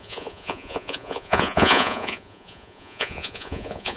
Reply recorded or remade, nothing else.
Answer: remade